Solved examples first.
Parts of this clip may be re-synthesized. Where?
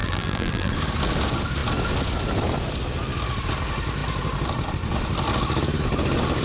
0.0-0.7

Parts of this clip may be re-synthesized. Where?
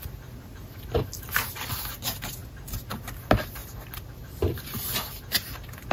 3.6-4.7